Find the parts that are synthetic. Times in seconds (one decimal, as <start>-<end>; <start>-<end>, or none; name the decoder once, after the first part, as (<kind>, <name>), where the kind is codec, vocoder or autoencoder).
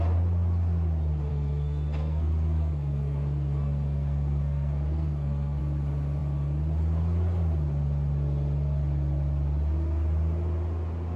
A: 1.3-5.6 (codec, SNAC)